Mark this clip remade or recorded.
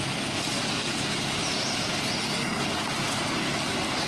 recorded